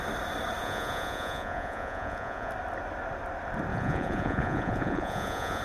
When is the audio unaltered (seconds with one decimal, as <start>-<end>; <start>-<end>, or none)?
0.0-0.6; 2.5-3.7